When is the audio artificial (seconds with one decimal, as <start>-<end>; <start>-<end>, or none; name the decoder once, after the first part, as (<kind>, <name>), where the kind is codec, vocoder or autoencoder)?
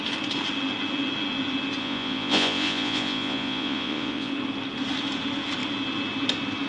1.8-4.3 (vocoder, Vocos)